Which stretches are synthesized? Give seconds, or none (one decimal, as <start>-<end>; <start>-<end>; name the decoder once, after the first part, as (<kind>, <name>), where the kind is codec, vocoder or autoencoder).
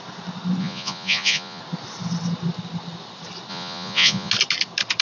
0.6-1.6 (vocoder, Vocos); 3.5-4.3